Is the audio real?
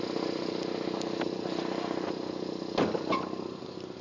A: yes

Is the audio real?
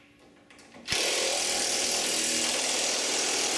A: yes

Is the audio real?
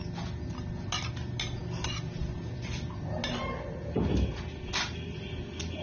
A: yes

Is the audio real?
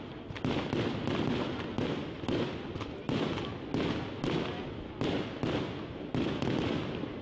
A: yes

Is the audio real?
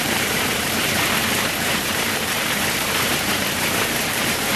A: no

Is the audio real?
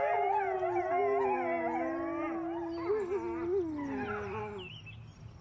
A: yes